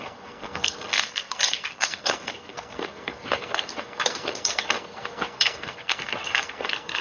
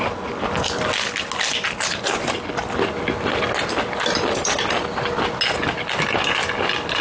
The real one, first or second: second